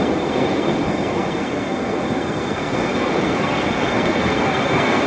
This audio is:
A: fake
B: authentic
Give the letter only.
A